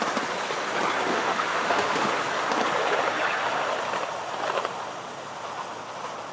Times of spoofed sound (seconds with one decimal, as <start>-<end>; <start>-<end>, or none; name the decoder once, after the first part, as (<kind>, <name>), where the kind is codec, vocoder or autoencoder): 1.1-2.1 (autoencoder, DAC-VAE)